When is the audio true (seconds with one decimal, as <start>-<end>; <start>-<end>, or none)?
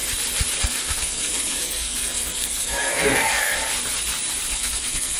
0.0-0.6; 3.7-4.5